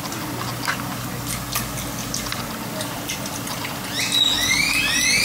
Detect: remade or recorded recorded